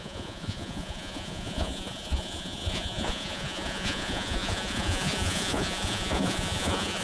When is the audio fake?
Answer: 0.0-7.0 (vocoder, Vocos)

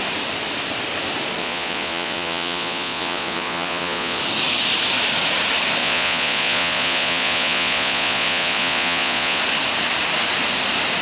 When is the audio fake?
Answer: 1.4-4.2 (vocoder, Vocos); 5.8-9.4